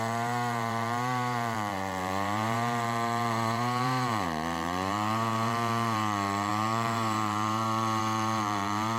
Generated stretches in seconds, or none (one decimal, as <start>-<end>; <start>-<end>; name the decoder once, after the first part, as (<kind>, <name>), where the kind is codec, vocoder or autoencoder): 0.0-9.0 (vocoder, BigVGAN v2)